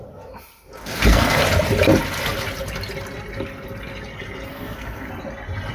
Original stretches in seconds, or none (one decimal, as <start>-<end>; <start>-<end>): 0.0-0.8; 1.4-4.5; 5.1-5.7